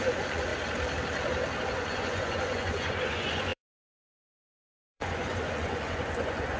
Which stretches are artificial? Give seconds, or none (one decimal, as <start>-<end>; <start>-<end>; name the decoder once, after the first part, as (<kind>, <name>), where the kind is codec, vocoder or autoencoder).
0.0-0.5 (vocoder, Vocos); 1.6-6.6